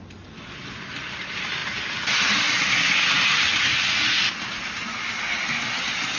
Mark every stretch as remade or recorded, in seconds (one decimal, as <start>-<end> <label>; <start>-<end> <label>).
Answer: 0.0-6.2 recorded